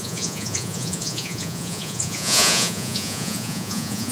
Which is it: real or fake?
fake